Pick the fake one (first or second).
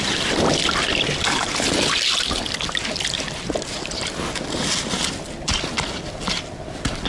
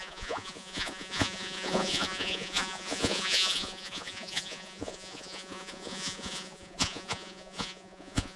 second